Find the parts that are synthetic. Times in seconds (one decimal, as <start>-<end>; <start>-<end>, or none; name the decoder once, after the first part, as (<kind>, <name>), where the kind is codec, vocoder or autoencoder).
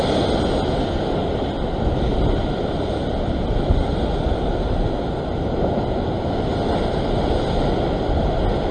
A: none